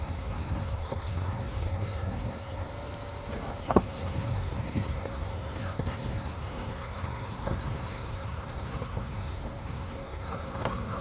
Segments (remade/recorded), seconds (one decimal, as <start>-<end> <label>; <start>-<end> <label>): 0.0-2.7 remade; 2.7-3.6 recorded; 3.6-11.0 remade